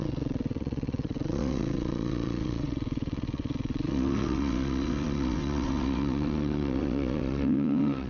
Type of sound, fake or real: fake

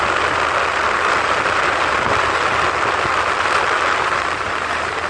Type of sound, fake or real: real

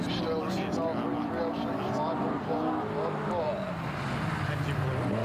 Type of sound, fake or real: real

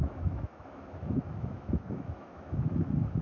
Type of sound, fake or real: fake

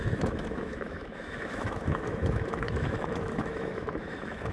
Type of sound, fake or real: fake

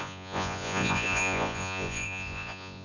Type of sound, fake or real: fake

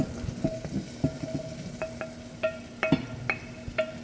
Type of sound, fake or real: fake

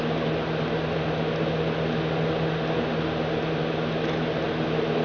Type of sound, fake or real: real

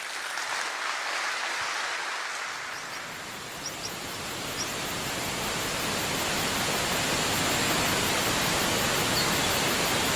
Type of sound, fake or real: real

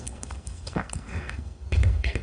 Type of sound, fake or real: fake